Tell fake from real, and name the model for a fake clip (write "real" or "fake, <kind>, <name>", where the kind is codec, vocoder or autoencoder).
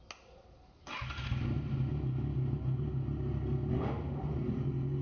real